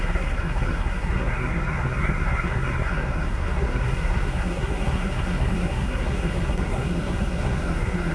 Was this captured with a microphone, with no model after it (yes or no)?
no